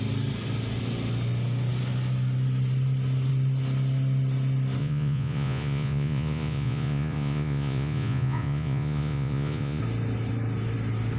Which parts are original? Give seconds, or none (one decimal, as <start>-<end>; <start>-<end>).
0.0-4.8; 9.8-11.2